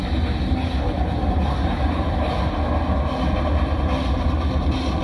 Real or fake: real